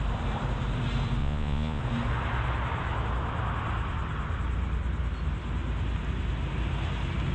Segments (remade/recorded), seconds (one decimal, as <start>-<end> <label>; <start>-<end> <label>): 0.0-1.2 recorded; 1.2-1.8 remade; 1.8-7.3 recorded